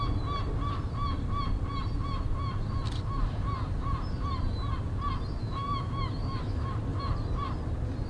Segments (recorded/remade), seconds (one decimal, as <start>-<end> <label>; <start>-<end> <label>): 0.0-5.4 recorded; 5.4-6.7 remade; 6.7-8.1 recorded